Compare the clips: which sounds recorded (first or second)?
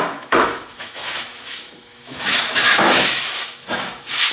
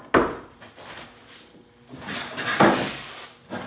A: second